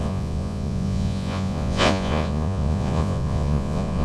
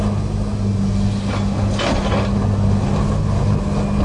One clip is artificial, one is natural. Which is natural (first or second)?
second